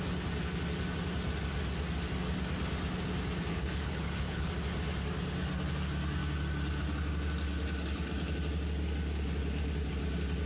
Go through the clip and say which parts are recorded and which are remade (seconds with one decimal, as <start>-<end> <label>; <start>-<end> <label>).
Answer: 0.0-3.5 recorded; 3.5-4.5 remade; 4.5-10.5 recorded